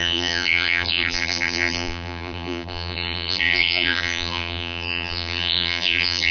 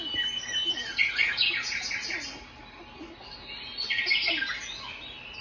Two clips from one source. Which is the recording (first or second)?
second